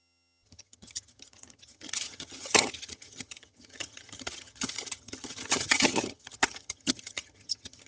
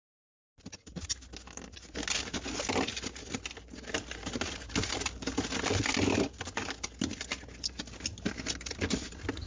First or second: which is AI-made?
first